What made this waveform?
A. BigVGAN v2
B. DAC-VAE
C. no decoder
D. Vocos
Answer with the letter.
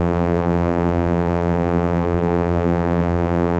A